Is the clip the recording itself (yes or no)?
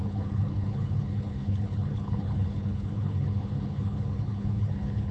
no